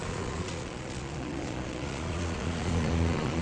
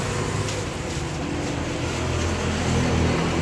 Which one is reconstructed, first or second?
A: first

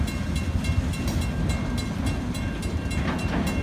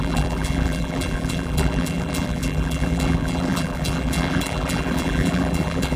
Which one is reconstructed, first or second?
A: second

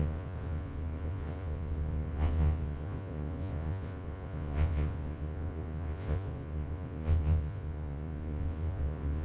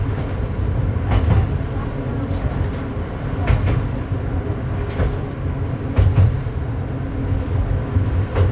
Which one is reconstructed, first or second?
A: first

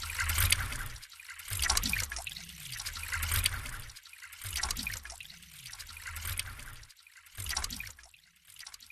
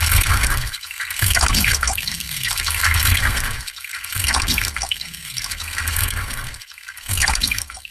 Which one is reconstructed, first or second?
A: second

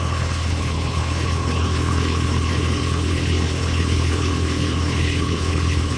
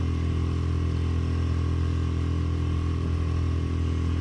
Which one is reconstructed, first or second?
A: first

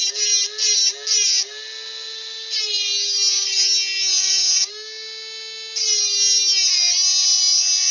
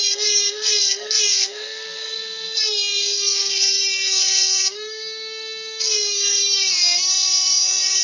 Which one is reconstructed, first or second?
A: second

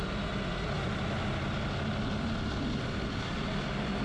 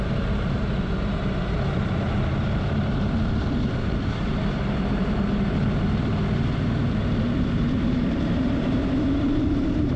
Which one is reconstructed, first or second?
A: second